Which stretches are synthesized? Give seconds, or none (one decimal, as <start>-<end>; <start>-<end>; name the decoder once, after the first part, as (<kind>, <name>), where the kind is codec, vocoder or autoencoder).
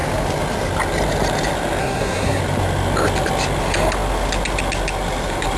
1.8-2.4 (codec, SNAC)